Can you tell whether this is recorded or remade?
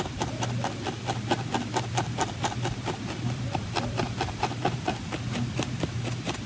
recorded